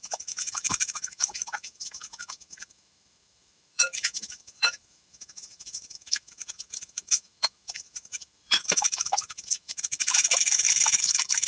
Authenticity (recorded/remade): remade